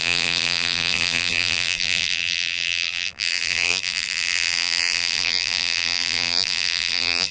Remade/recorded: remade